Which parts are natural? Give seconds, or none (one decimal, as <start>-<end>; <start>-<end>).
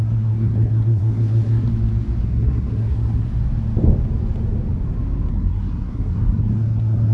1.7-2.2; 3.3-5.3